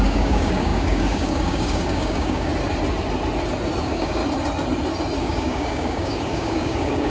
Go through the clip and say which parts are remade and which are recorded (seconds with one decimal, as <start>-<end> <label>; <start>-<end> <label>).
0.0-2.5 remade; 2.5-3.8 recorded; 3.8-4.2 remade; 4.2-5.2 recorded; 5.2-7.1 remade